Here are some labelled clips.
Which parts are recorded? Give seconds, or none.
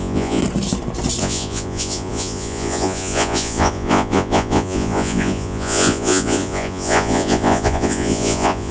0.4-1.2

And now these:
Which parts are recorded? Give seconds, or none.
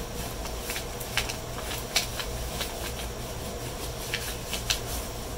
0.0-5.4